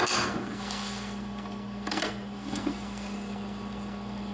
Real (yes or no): no